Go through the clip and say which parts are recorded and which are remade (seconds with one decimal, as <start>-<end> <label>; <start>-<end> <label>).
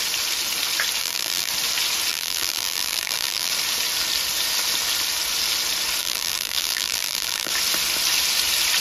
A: 0.0-1.0 recorded; 1.0-1.5 remade; 1.5-2.1 recorded; 2.1-3.5 remade; 3.5-6.0 recorded; 6.0-7.5 remade; 7.5-8.8 recorded